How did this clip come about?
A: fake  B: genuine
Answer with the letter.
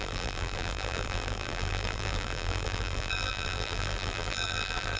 A